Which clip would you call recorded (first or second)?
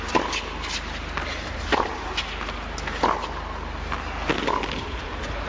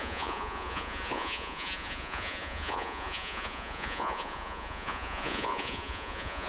first